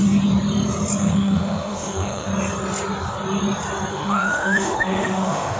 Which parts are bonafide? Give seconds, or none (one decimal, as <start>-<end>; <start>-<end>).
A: 0.0-1.0; 2.3-3.9